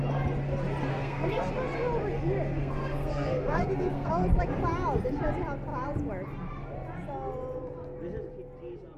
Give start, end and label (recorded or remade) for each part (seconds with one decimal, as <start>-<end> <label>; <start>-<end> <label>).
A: 0.0-0.9 recorded; 0.9-1.5 remade; 1.5-2.6 recorded; 2.6-4.1 remade; 4.1-9.0 recorded